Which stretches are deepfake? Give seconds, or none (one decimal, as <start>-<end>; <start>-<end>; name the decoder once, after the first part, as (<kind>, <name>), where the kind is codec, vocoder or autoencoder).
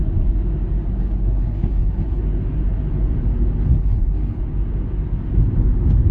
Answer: 1.0-2.2 (codec, HILCodec); 3.7-4.4